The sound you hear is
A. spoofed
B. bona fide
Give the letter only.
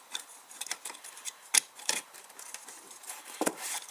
A